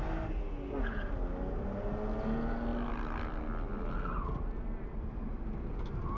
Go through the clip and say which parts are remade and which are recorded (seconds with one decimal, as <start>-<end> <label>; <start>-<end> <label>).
0.0-6.2 recorded